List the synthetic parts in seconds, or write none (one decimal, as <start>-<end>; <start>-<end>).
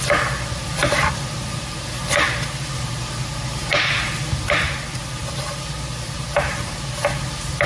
none